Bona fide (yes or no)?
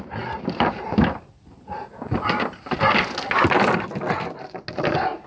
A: yes